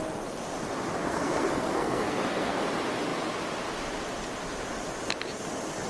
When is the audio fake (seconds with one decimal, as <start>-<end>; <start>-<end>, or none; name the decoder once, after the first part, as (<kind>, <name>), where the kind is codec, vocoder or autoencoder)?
1.0-2.6 (codec, SNAC)